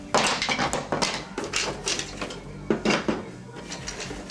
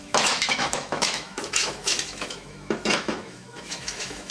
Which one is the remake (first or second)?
second